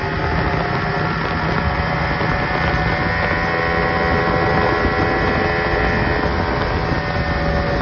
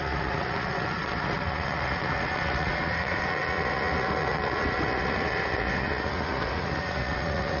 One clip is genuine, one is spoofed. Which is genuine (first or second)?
first